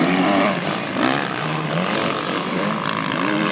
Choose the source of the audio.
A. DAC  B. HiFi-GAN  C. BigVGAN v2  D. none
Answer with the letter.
C